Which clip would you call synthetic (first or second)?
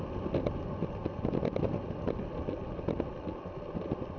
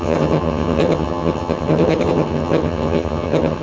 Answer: second